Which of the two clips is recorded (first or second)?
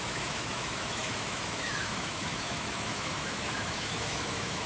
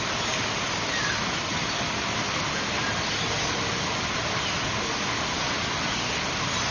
second